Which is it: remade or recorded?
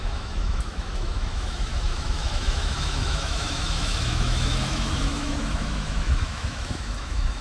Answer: remade